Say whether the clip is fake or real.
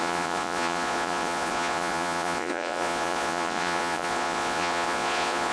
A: fake